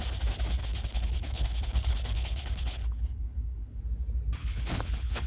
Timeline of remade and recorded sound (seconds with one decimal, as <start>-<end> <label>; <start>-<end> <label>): 0.0-0.6 recorded; 0.6-3.8 remade; 3.8-4.4 recorded; 4.4-5.3 remade

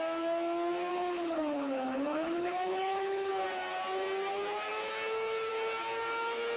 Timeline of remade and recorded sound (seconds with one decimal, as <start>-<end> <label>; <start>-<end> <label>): 0.0-0.9 recorded; 0.9-3.3 remade; 3.3-6.6 recorded